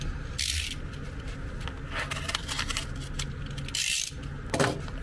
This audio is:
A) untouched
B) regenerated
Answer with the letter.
A